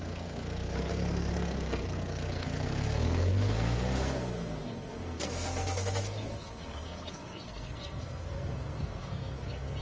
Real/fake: fake